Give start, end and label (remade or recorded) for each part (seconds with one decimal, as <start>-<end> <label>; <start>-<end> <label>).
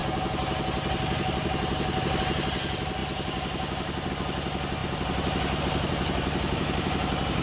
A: 0.0-7.4 recorded